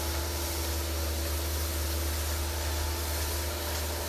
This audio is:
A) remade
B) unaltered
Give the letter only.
B